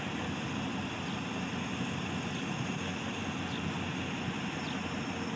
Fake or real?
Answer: real